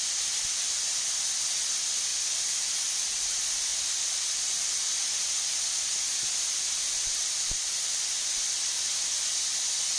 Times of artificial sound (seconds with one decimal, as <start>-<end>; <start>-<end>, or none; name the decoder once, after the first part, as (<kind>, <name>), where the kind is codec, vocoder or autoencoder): none